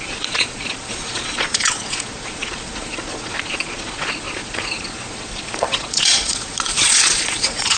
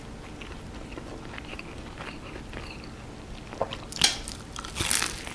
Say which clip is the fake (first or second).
first